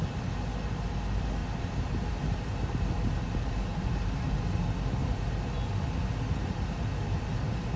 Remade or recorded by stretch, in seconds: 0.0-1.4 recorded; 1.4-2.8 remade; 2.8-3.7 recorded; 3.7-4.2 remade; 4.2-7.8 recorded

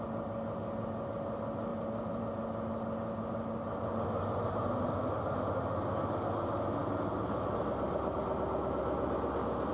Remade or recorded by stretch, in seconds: 0.0-1.7 recorded; 1.7-2.2 remade; 2.2-9.7 recorded

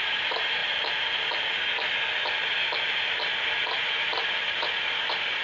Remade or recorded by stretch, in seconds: 0.0-0.6 remade; 0.6-3.8 recorded; 3.8-5.4 remade

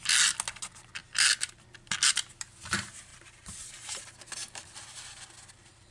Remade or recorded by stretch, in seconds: 0.0-3.1 recorded; 3.1-4.0 remade; 4.0-5.9 recorded

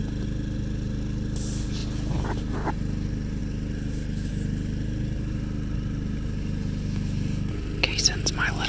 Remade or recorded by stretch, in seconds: 0.0-8.7 recorded

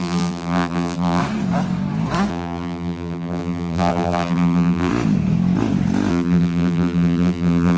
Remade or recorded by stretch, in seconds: 0.0-1.2 remade; 1.2-2.3 recorded; 2.3-4.9 remade; 4.9-6.1 recorded; 6.1-7.8 remade